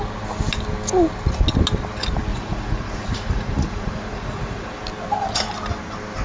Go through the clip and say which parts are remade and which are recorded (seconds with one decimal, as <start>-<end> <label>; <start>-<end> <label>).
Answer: 0.0-2.3 recorded; 2.3-4.8 remade; 4.8-6.2 recorded